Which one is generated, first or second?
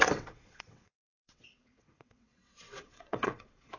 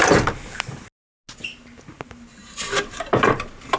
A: first